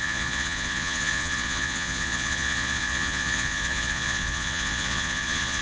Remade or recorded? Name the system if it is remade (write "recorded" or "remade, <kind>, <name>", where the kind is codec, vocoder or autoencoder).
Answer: remade, vocoder, Vocos